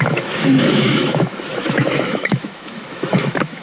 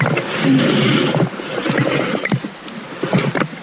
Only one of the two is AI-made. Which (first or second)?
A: first